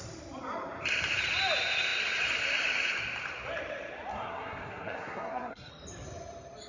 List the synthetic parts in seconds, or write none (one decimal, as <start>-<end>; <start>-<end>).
4.1-5.7